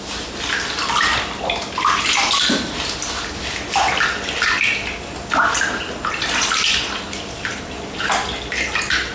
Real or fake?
real